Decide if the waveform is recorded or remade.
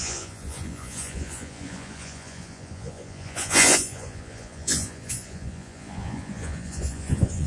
remade